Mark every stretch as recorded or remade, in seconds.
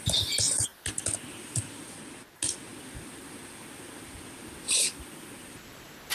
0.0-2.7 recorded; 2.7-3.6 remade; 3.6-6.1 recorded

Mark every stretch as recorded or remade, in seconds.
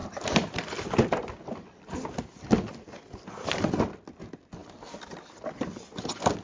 0.0-6.4 recorded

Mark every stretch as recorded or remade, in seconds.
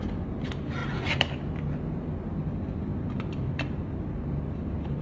0.0-0.8 recorded; 0.8-1.6 remade; 1.6-5.0 recorded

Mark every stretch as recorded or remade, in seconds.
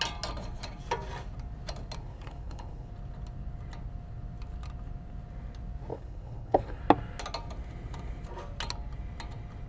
0.0-2.0 recorded; 2.0-2.9 remade; 2.9-5.9 recorded; 5.9-6.8 remade; 6.8-9.7 recorded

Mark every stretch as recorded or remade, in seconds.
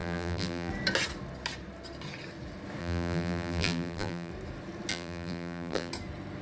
0.0-0.7 remade; 0.7-2.8 recorded; 2.8-4.3 remade; 4.3-4.9 recorded; 4.9-5.9 remade; 5.9-6.4 recorded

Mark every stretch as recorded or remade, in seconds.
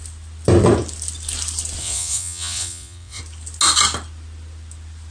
0.0-1.8 recorded; 1.8-3.2 remade; 3.2-5.1 recorded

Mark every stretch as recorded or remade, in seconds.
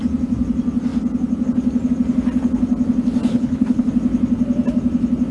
0.0-3.3 recorded; 3.3-3.9 remade; 3.9-5.3 recorded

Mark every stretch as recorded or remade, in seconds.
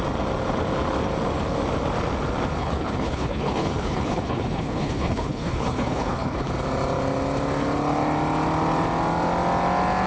0.0-2.6 recorded; 2.6-6.5 remade; 6.5-10.1 recorded